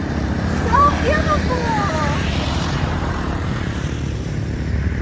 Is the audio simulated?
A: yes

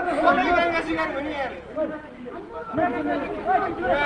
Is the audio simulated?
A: no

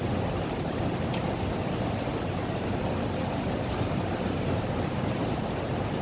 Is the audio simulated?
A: yes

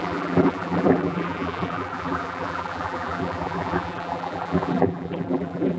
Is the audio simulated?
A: yes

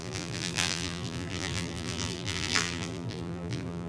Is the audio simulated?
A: yes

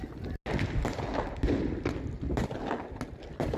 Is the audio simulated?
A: no